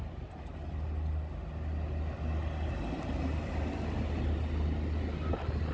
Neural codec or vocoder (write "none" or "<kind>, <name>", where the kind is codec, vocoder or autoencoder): none